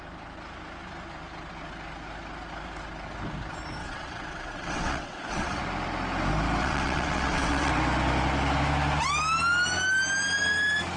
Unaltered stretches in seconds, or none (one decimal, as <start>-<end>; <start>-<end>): 0.0-3.8; 5.6-6.6; 7.7-11.0